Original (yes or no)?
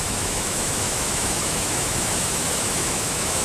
no